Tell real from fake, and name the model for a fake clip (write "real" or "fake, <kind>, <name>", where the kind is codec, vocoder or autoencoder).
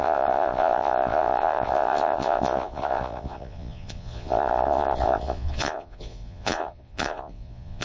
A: fake, vocoder, Vocos